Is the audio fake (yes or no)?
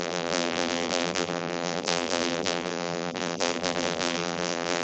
yes